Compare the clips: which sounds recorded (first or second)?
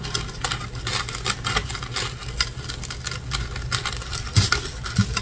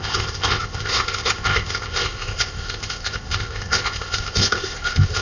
first